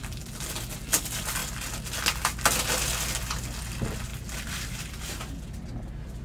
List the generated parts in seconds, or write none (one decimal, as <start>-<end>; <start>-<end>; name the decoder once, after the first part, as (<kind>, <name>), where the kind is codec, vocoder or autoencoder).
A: none